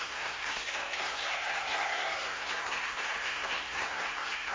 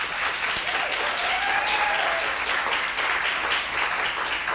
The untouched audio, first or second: second